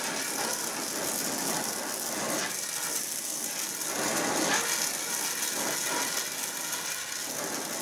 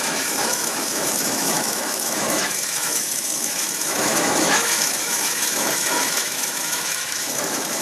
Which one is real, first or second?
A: first